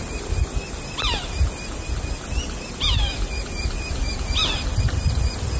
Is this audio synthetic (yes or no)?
no